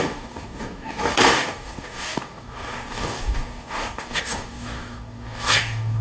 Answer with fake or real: fake